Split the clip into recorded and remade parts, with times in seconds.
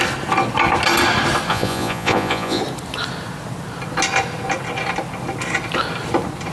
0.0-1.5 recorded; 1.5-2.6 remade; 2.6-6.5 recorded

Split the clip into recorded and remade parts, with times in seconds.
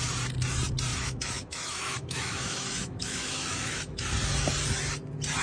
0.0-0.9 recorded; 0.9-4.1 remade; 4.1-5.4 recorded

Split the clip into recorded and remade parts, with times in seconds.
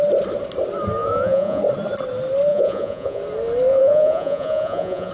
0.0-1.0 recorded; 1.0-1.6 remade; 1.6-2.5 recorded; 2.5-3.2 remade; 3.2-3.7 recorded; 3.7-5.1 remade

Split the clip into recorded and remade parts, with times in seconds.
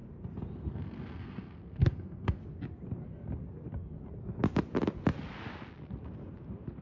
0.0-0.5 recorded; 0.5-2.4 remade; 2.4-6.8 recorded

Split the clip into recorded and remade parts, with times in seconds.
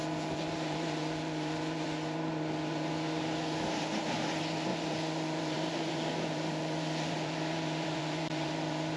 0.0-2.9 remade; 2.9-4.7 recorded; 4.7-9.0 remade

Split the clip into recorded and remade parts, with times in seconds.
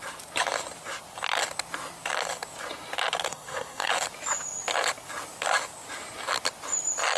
0.0-3.3 recorded; 3.3-3.9 remade; 3.9-7.2 recorded